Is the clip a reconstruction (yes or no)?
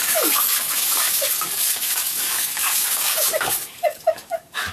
yes